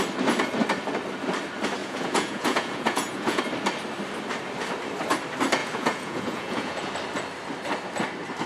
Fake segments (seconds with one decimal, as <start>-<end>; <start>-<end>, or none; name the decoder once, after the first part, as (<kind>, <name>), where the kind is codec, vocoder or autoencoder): 1.8-3.4 (vocoder, Vocos); 5.6-6.9